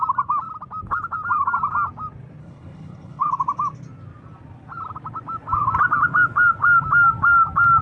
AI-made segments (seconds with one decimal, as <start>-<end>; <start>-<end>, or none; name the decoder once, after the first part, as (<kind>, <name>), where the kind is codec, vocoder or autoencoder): 2.4-3.3 (codec, HILCodec)